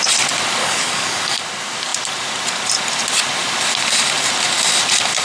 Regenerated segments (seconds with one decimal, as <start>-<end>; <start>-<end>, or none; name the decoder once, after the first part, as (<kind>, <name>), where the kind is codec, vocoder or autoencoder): 0.6-1.4 (codec, DAC)